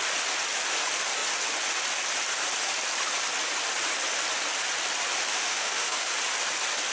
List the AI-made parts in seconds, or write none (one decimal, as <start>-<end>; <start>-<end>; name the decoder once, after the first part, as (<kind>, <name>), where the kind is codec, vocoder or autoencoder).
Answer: 5.3-6.1 (autoencoder, DAC-VAE)